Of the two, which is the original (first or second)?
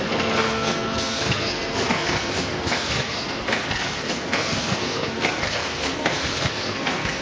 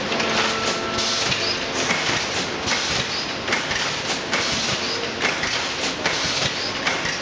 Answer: second